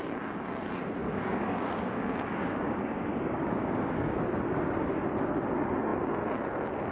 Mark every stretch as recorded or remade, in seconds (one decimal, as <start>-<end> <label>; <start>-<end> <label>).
0.0-1.0 recorded; 1.0-4.2 remade; 4.2-6.9 recorded